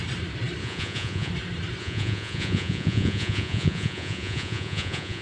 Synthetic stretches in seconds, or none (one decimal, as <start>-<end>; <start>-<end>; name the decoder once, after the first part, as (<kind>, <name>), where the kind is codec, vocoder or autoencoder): 0.6-1.3 (vocoder, Vocos); 1.8-5.2